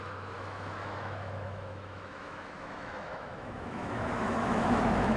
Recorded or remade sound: remade